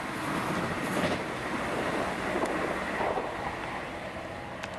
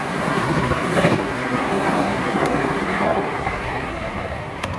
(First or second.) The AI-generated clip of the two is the second